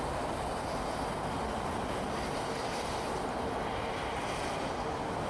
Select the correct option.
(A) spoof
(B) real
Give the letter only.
B